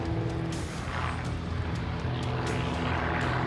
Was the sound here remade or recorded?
recorded